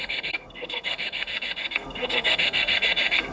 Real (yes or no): no